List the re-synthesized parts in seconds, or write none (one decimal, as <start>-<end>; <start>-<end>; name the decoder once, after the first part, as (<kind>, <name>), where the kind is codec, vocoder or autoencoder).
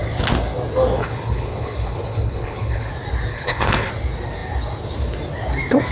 1.0-2.9 (codec, HILCodec); 3.3-3.9